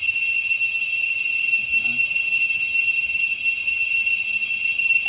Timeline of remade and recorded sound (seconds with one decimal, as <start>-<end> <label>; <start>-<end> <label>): 0.0-1.7 recorded; 1.7-3.2 remade; 3.2-5.1 recorded